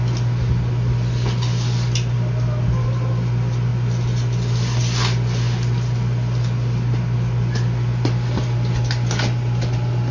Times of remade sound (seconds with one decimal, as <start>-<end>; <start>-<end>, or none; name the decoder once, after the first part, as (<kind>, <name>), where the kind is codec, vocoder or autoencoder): none

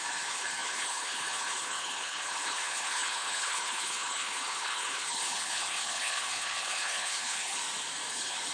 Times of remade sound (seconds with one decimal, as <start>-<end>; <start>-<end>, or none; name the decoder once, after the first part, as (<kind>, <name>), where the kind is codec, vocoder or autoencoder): 0.0-7.6 (codec, HILCodec); 8.1-8.5

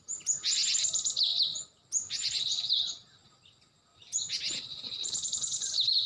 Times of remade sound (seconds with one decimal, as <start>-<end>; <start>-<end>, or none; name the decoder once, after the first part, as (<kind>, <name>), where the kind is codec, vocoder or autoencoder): none

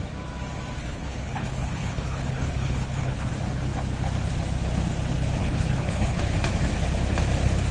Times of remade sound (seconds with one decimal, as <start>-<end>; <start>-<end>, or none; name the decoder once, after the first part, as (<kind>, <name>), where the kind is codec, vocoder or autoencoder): 0.8-3.3 (codec, HILCodec); 5.4-6.2

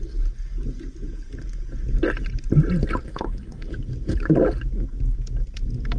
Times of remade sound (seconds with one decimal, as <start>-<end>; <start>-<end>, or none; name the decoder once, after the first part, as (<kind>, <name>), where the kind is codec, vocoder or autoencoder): 3.1-3.7 (codec, HILCodec)

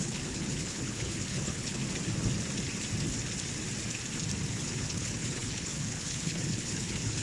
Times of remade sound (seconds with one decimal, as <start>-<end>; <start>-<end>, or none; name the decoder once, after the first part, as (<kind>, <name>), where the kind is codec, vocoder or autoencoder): 0.0-1.8 (codec, HILCodec); 4.5-7.2